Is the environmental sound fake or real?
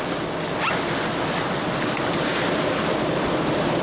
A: real